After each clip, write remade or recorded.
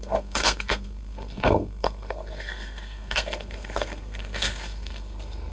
remade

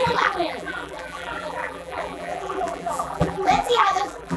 remade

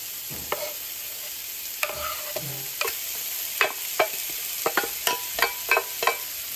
recorded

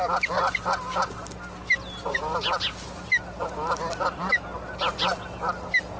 recorded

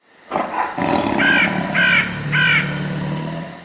recorded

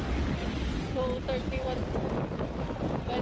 recorded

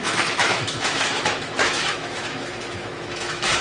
remade